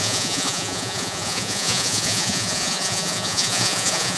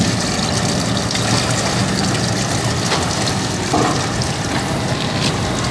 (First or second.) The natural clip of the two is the second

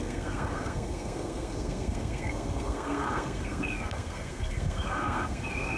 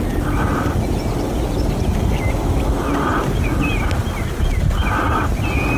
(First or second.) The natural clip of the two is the second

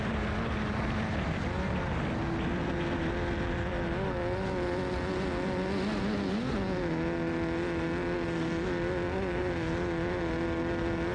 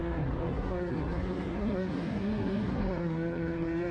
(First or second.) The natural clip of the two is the first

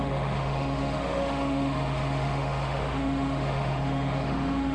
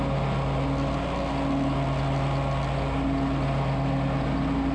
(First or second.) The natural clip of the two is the second